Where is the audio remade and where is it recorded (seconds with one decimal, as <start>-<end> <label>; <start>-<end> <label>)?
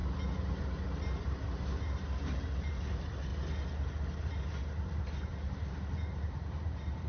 0.0-1.2 recorded; 1.2-3.3 remade; 3.3-4.2 recorded; 4.2-5.3 remade; 5.3-5.9 recorded; 5.9-7.1 remade